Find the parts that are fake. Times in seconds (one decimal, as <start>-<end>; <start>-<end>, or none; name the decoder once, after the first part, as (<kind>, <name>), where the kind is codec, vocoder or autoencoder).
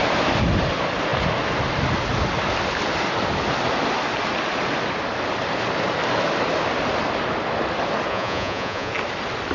8.1-8.9 (vocoder, Vocos)